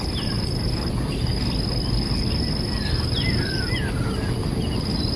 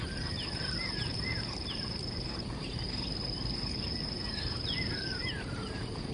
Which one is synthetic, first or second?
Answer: second